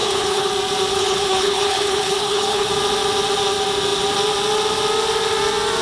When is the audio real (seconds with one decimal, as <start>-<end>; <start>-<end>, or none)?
0.5-0.9; 2.7-5.8